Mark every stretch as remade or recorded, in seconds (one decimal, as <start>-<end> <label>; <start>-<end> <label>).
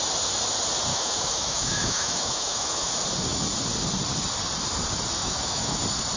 0.0-0.9 recorded; 0.9-2.9 remade; 2.9-5.2 recorded; 5.2-5.8 remade; 5.8-6.2 recorded